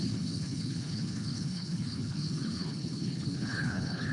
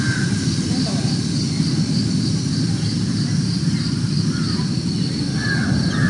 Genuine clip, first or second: second